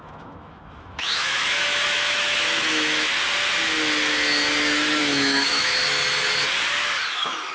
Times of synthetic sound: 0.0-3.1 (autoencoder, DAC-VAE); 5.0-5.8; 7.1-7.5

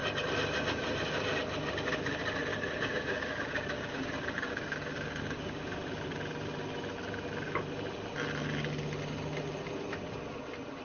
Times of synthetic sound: 2.5-5.6 (codec, DAC)